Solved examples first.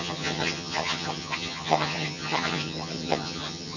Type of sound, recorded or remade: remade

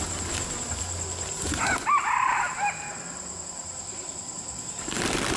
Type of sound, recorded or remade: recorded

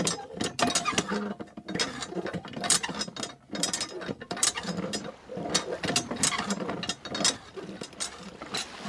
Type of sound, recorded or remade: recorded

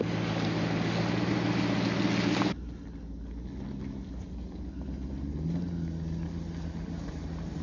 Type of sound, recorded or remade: recorded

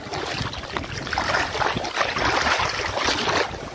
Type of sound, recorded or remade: recorded